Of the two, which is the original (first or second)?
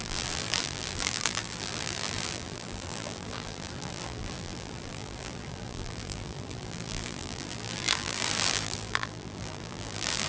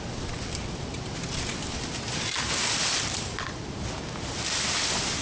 second